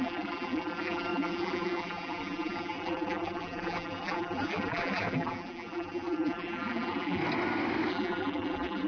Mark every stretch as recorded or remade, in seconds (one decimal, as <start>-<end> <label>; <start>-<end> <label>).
0.0-7.2 remade; 7.2-7.9 recorded; 7.9-8.9 remade